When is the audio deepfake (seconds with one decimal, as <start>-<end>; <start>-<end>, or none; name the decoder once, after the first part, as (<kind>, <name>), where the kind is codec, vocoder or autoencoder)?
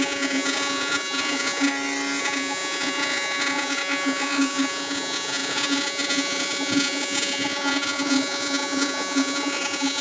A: 0.0-1.7 (vocoder, Vocos); 2.2-10.0